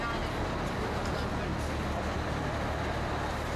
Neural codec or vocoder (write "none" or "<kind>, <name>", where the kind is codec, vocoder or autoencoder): none